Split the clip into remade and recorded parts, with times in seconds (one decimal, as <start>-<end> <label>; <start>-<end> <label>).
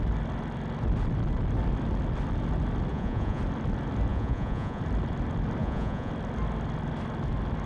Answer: 0.0-2.9 recorded; 2.9-3.4 remade; 3.4-4.1 recorded; 4.1-4.8 remade; 4.8-5.6 recorded; 5.6-6.1 remade; 6.1-7.7 recorded